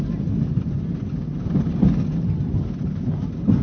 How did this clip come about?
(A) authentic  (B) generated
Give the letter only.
A